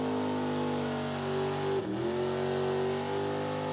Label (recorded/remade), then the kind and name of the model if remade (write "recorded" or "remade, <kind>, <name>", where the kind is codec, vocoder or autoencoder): recorded